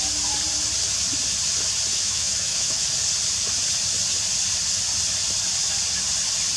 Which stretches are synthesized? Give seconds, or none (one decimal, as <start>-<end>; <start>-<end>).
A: 1.9-2.9